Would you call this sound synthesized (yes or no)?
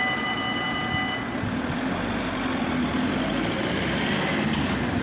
no